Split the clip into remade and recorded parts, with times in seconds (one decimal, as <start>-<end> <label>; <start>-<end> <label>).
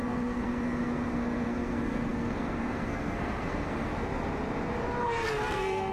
0.0-3.9 remade; 3.9-5.0 recorded; 5.0-5.9 remade